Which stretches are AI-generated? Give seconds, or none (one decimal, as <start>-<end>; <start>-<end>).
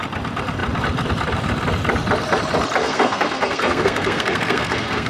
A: 2.8-5.1